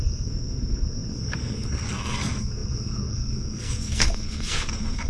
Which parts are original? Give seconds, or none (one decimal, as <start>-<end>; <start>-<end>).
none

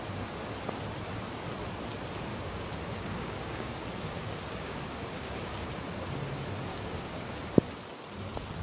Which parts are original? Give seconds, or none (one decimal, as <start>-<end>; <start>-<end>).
0.0-2.3; 5.8-6.7; 7.4-8.6

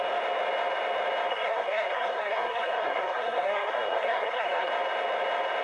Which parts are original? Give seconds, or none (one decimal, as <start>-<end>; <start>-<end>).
0.0-1.3; 4.7-5.6

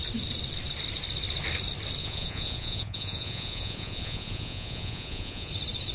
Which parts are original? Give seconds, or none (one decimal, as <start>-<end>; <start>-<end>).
0.0-2.0; 5.5-5.9

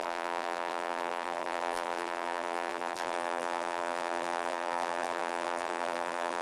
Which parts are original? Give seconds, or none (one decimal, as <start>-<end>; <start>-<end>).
none

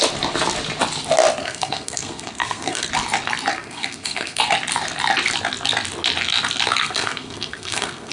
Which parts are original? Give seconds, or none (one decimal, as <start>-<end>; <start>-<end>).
0.0-1.4; 2.9-3.5; 4.4-6.8

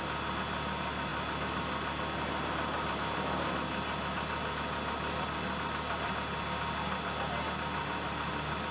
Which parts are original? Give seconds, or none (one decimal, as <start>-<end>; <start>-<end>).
0.0-8.7

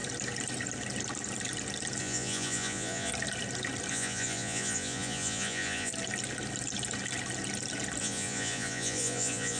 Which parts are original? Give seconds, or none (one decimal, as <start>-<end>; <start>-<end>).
0.0-2.0; 3.1-3.9; 5.9-8.0